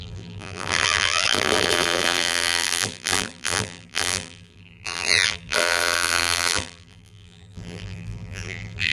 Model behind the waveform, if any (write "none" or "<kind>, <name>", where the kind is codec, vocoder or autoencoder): vocoder, BigVGAN v2